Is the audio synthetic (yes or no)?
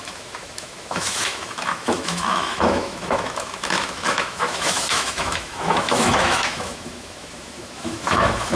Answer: yes